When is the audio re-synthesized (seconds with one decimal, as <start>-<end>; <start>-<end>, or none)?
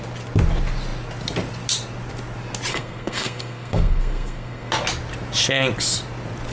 2.7-4.7